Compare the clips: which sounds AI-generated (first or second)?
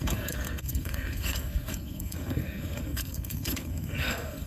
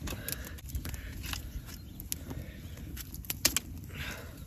first